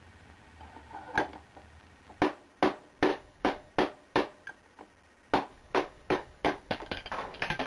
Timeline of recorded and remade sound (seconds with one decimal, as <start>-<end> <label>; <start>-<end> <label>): 0.0-3.1 recorded; 3.1-3.7 remade; 3.7-5.5 recorded; 5.5-7.7 remade

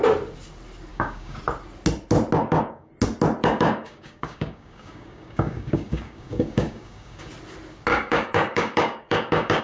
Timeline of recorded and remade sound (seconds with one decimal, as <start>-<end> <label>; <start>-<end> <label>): 0.0-0.9 recorded; 0.9-1.4 remade; 1.4-2.4 recorded; 2.4-2.9 remade; 2.9-3.4 recorded; 3.4-7.3 remade; 7.3-7.9 recorded; 7.9-9.6 remade

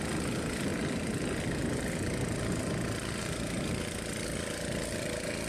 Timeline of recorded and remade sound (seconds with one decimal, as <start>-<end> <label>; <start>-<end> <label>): 0.0-5.5 recorded

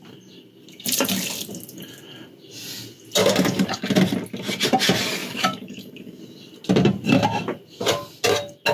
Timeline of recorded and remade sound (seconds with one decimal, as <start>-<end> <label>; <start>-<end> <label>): 0.0-3.2 recorded; 3.2-3.9 remade; 3.9-5.2 recorded; 5.2-6.2 remade; 6.2-8.7 recorded

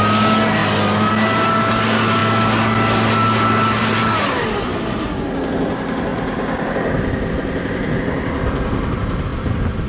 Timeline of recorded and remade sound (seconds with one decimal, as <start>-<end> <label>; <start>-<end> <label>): 0.0-9.9 recorded

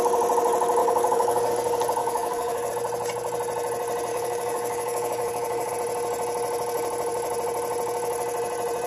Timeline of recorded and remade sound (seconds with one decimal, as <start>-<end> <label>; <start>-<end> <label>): 0.0-0.8 recorded; 0.8-1.5 remade; 1.5-2.0 recorded; 2.0-2.7 remade; 2.7-4.1 recorded; 4.1-5.7 remade; 5.7-8.9 recorded

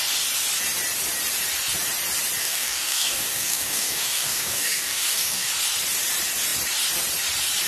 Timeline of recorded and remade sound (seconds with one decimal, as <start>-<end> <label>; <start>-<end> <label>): 0.0-2.4 recorded; 2.4-5.5 remade; 5.5-7.7 recorded

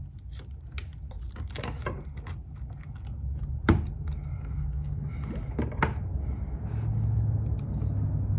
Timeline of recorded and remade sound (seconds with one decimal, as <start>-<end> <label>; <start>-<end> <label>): 0.0-4.3 recorded; 4.3-5.1 remade; 5.1-8.4 recorded